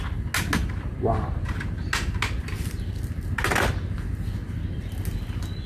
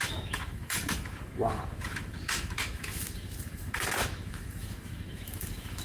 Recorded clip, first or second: first